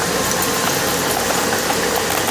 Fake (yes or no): no